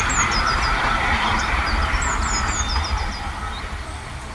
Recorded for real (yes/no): yes